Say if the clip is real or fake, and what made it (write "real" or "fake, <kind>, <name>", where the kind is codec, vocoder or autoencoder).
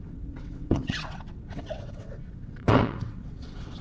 fake, vocoder, WaveNeXt